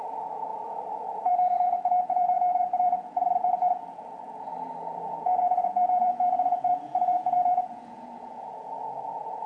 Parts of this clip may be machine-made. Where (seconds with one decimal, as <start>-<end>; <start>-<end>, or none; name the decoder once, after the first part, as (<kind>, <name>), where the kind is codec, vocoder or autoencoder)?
0.0-9.5 (vocoder, Vocos)